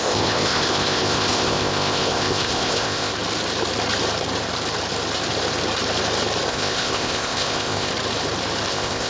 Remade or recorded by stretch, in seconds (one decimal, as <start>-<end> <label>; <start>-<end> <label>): 0.0-3.1 remade; 3.1-6.5 recorded; 6.5-7.9 remade; 7.9-8.7 recorded; 8.7-9.1 remade